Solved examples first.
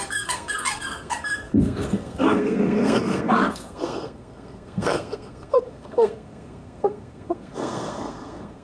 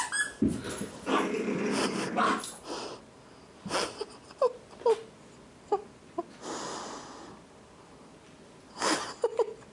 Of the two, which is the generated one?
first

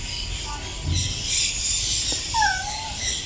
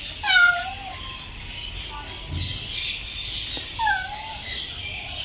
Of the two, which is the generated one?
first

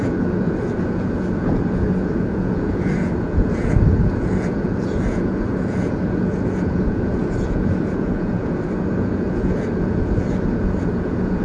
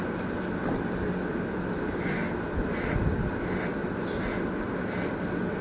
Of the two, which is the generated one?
first